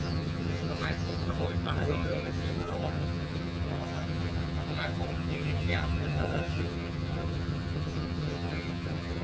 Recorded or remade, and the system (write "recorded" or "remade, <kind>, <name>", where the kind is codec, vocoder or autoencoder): remade, vocoder, HiFi-GAN